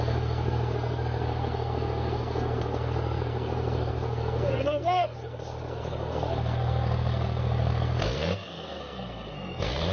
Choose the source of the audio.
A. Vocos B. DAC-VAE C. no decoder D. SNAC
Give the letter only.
D